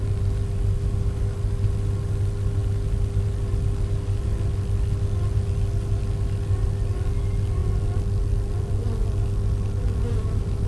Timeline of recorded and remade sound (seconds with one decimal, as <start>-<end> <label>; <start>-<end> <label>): 0.0-10.7 recorded